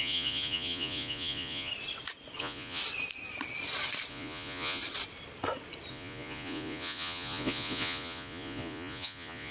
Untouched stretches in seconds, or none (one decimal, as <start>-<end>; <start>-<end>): 1.7-2.4; 2.8-4.1; 4.8-5.9